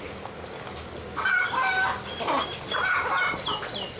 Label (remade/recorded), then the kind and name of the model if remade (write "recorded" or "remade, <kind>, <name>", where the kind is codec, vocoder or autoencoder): recorded